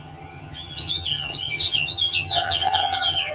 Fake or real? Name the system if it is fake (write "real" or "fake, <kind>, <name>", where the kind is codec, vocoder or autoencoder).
fake, vocoder, HiFi-GAN